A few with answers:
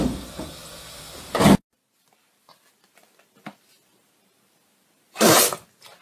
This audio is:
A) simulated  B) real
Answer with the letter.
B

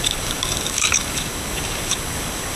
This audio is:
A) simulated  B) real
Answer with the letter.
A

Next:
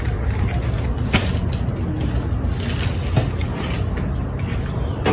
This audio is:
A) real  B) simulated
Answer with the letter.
A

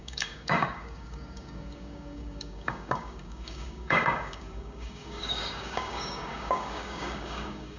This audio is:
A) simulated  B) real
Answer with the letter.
A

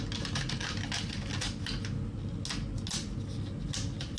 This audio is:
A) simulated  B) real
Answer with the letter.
B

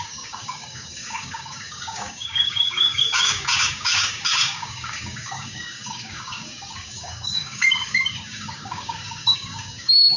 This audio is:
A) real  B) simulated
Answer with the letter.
B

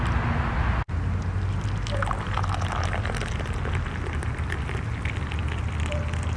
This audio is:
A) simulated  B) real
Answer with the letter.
B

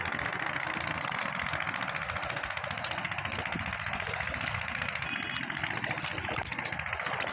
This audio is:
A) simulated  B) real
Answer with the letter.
B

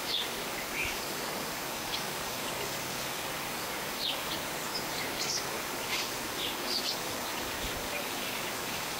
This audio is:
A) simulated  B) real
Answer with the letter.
A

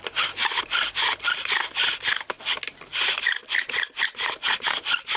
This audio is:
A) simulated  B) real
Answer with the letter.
B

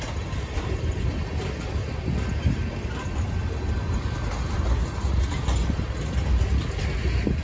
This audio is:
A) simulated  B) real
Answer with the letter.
B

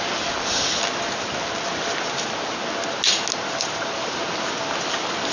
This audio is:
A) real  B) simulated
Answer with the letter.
A